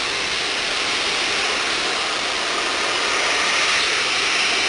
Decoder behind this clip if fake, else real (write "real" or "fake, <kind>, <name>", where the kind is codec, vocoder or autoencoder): real